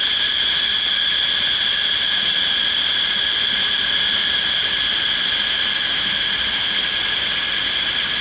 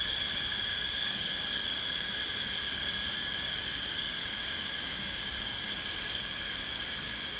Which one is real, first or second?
first